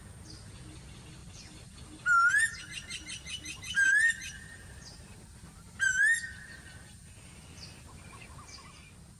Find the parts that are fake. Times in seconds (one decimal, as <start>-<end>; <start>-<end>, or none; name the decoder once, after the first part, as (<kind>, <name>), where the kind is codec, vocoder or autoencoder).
none

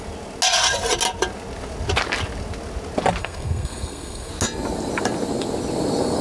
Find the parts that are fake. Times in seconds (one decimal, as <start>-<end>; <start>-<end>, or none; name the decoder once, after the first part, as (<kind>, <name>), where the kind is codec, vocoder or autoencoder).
3.2-4.3 (codec, SNAC)

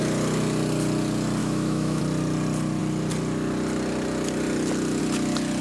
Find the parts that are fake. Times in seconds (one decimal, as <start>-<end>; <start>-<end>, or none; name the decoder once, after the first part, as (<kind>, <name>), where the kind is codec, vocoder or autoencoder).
1.4-2.0 (autoencoder, DAC-VAE)

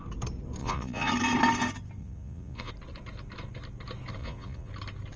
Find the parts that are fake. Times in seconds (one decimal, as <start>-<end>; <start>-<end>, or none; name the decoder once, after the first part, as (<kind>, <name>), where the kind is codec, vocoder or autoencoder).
0.6-1.1 (vocoder, Vocos); 2.0-2.7; 4.2-4.7

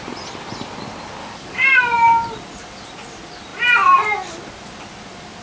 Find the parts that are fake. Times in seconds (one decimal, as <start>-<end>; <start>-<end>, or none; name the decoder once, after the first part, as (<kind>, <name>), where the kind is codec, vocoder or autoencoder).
1.2-1.8 (codec, DAC)

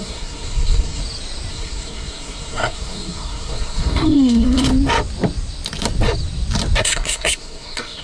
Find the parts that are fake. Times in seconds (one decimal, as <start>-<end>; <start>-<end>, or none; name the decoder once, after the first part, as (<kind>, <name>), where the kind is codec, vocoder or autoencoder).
0.0-1.0 (codec, SNAC); 1.5-4.7; 6.8-8.0

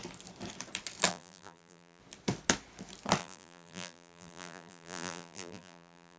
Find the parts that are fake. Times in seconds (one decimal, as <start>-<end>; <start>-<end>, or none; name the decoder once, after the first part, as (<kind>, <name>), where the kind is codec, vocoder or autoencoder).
1.1-2.0 (vocoder, BigVGAN v2); 3.2-6.2